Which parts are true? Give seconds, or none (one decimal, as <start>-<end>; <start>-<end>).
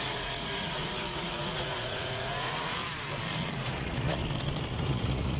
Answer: 2.8-3.5; 4.2-4.7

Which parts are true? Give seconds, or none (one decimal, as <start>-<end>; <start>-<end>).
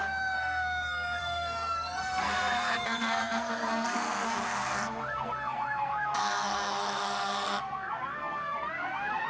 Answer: none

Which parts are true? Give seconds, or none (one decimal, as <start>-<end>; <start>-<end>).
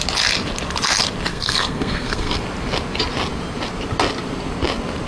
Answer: 0.0-1.3; 2.4-5.1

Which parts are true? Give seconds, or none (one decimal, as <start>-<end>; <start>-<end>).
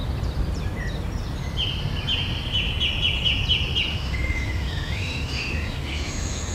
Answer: 0.0-3.9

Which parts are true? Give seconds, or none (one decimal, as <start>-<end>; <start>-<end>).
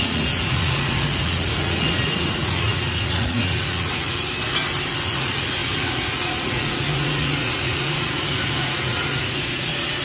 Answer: 4.3-4.9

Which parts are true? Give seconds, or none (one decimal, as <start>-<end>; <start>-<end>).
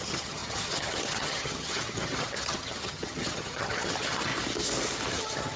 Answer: 4.3-5.1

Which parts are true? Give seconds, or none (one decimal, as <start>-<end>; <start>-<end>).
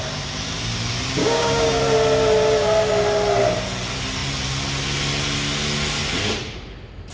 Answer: 0.0-1.2; 1.8-7.1